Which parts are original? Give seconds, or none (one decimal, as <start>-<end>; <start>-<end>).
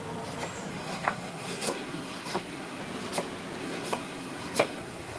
0.0-0.7; 2.8-3.6